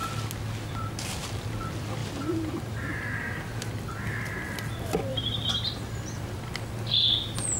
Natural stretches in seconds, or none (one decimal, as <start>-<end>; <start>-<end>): 0.0-2.0; 2.9-5.1; 6.5-7.6